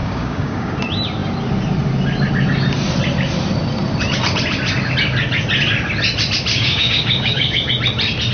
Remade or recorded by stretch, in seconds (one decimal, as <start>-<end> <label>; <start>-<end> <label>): 0.0-0.7 remade; 0.7-6.5 recorded; 6.5-7.7 remade; 7.7-8.3 recorded